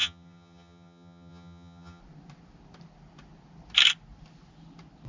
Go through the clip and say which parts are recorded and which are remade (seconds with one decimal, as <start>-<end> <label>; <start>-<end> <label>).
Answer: 0.0-2.0 remade; 2.0-5.1 recorded